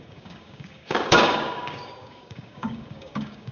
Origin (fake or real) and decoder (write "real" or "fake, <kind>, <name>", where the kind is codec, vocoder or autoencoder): fake, codec, DAC